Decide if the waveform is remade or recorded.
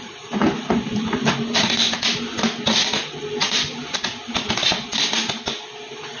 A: recorded